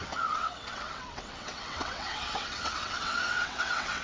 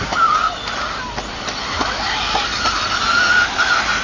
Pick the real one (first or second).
second